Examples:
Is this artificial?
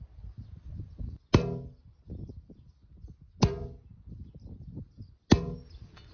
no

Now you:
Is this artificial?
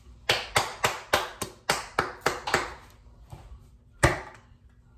no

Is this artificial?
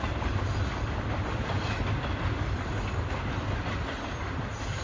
no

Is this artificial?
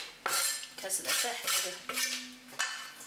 no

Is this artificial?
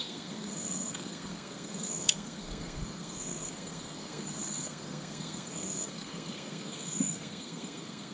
yes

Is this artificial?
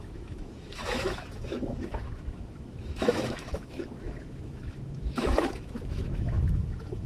yes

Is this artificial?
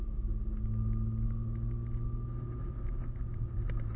no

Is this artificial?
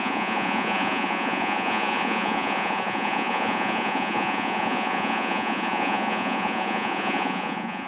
yes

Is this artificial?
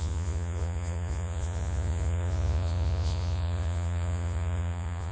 yes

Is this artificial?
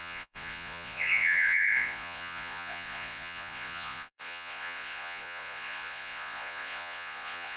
yes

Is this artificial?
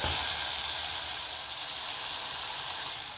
yes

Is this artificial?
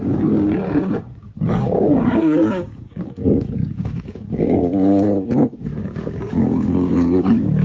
yes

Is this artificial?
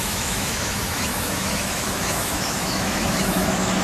yes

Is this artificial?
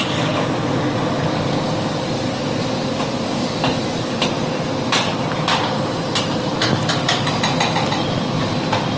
no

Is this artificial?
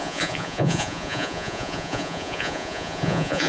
yes